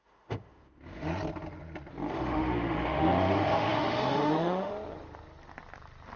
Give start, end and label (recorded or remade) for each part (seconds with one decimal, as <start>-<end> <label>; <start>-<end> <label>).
0.0-1.1 remade; 1.1-2.1 recorded; 2.1-4.7 remade; 4.7-6.2 recorded